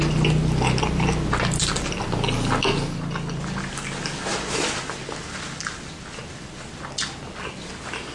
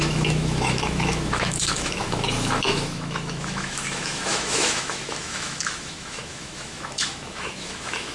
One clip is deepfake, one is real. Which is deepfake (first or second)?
second